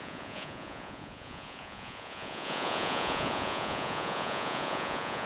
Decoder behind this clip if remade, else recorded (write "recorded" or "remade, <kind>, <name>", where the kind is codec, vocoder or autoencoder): remade, vocoder, Vocos